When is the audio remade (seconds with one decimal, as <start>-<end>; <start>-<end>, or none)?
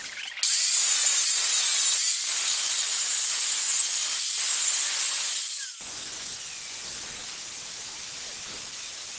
2.9-3.6; 4.5-6.9